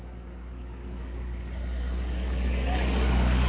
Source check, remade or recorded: remade